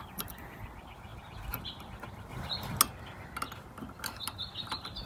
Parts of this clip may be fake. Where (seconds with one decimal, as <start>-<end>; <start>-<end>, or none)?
none

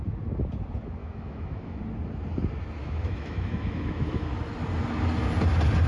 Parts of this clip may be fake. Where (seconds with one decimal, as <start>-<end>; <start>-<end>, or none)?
1.0-1.8; 2.8-4.4